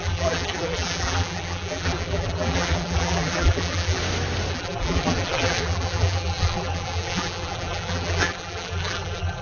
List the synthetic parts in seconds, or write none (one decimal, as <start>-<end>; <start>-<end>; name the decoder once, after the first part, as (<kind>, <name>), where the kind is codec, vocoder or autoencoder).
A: 0.0-4.0 (vocoder, BigVGAN v2); 4.5-9.4